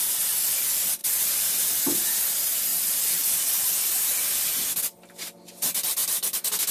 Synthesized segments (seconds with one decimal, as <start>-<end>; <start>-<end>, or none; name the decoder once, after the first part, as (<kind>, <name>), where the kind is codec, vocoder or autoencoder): 1.0-1.7 (vocoder, BigVGAN v2); 2.7-3.4